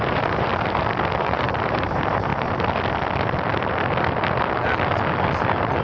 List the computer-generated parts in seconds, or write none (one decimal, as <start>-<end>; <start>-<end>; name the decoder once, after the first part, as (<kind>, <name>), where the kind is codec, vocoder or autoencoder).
0.0-0.5 (vocoder, BigVGAN v2); 1.2-2.3